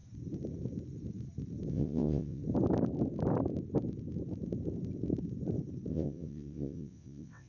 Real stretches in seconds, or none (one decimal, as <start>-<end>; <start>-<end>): 0.0-1.7; 2.4-5.9